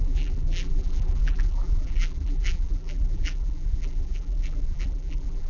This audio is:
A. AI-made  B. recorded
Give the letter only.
A